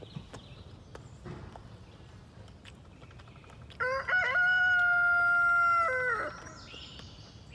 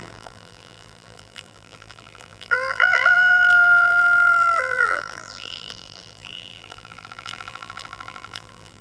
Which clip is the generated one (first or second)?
second